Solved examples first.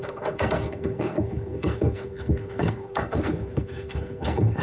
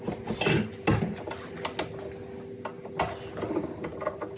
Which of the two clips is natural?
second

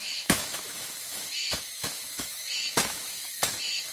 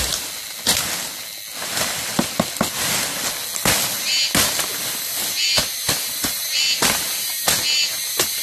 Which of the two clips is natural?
second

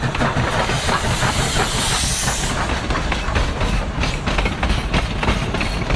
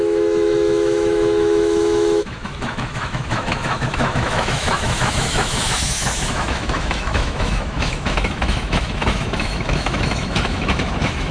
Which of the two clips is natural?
first